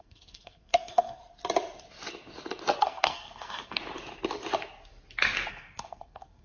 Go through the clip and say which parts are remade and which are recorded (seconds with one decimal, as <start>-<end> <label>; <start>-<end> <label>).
0.0-1.2 remade; 1.2-2.8 recorded; 2.8-3.8 remade; 3.8-5.5 recorded; 5.5-6.4 remade